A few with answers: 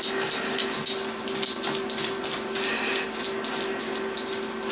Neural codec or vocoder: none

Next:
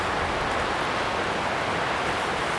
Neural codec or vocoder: none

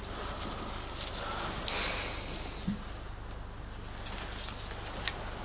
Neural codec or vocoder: none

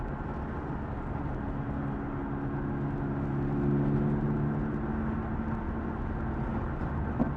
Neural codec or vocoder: none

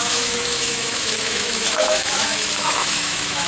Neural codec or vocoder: autoencoder, DAC-VAE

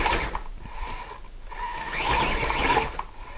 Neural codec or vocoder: none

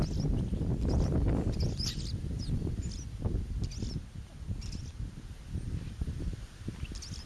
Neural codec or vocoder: none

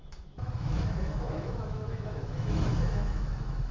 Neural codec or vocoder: autoencoder, DAC-VAE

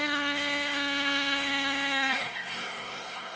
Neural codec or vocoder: codec, SNAC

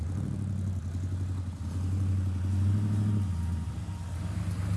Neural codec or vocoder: none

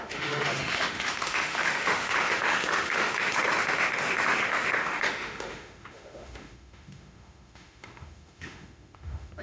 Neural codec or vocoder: autoencoder, DAC-VAE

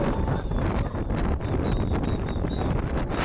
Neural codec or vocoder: none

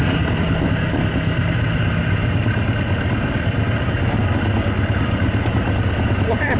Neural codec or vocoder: none